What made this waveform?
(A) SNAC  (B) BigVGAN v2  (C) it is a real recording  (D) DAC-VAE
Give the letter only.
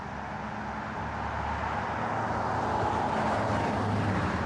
C